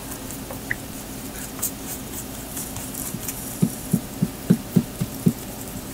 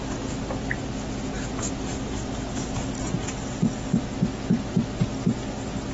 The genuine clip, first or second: second